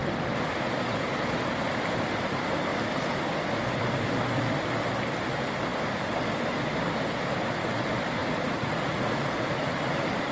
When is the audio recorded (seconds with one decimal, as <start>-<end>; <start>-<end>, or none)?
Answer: 0.0-8.2; 9.7-10.3